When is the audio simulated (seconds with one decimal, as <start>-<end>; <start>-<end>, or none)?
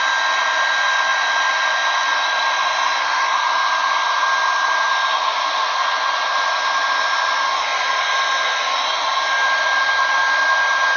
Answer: none